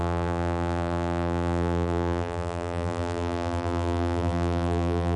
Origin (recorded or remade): remade